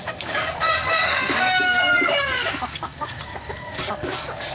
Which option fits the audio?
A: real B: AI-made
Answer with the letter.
B